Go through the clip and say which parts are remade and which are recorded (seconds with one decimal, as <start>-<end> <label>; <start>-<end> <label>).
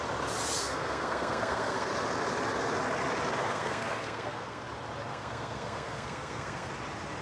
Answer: 0.0-0.6 recorded; 0.6-1.9 remade; 1.9-3.4 recorded; 3.4-4.6 remade; 4.6-5.1 recorded; 5.1-6.7 remade; 6.7-7.2 recorded